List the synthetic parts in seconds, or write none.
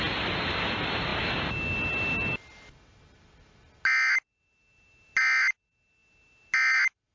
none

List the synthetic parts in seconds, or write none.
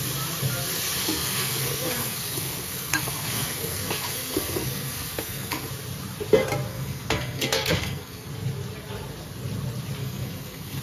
1.0-5.7 (codec, SNAC); 6.7-8.3; 10.0-10.8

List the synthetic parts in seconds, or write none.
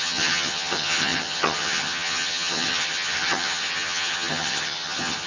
0.0-5.3 (vocoder, HiFi-GAN)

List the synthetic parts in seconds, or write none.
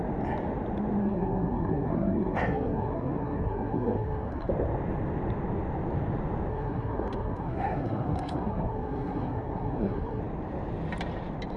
1.0-4.5 (codec, SNAC); 6.5-10.2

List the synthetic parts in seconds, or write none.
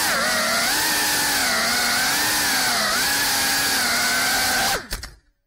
none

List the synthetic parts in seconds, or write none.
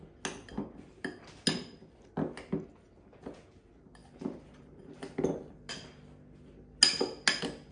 4.0-5.7 (vocoder, BigVGAN v2)